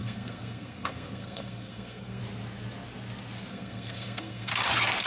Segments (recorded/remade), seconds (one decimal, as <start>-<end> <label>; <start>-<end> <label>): 0.0-2.2 remade; 2.2-3.5 recorded; 3.5-4.5 remade; 4.5-5.1 recorded